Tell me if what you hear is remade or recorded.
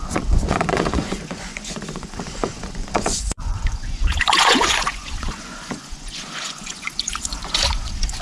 remade